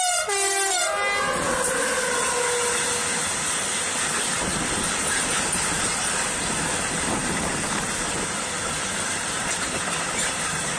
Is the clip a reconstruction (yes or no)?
no